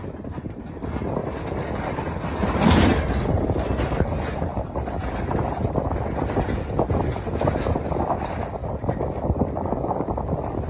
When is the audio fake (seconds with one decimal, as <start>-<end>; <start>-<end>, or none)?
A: none

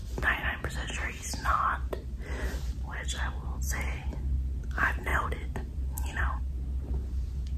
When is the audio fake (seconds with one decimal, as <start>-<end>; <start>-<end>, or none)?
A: 5.1-6.4

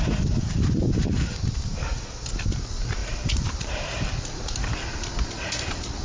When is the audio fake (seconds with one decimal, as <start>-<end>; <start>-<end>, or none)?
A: 3.0-4.8